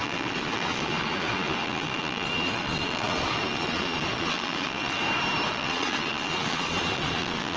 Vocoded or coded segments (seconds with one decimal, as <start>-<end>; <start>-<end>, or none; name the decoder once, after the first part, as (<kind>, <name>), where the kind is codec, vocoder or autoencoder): 0.0-5.0 (vocoder, Vocos); 5.5-7.6